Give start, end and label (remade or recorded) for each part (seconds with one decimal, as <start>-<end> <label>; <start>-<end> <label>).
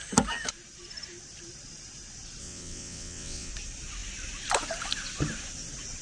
0.0-2.4 recorded; 2.4-3.5 remade; 3.5-6.0 recorded